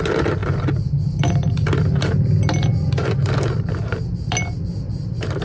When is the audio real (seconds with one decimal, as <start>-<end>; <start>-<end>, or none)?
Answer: 0.0-5.4